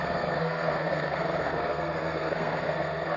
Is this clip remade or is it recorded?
remade